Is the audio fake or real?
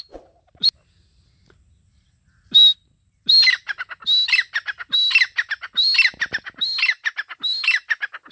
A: real